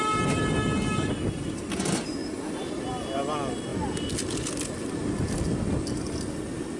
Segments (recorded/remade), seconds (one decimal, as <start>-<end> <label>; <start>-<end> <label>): 0.0-6.8 recorded